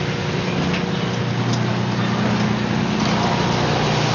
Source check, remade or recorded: recorded